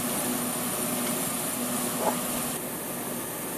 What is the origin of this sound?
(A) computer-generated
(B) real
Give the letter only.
B